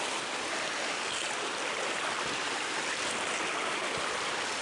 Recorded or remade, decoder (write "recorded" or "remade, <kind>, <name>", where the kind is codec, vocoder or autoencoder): recorded